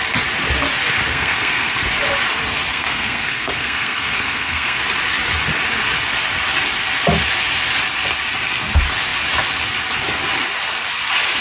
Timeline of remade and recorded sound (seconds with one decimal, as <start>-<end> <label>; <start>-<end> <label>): 0.0-1.1 recorded; 1.1-1.8 remade; 1.8-2.7 recorded; 2.7-4.8 remade; 4.8-11.4 recorded